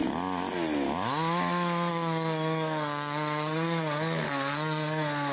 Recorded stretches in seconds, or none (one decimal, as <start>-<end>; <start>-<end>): 0.0-1.9